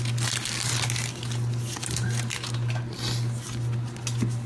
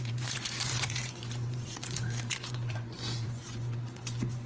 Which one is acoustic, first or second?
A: first